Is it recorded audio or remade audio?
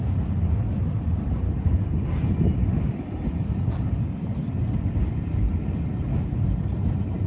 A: recorded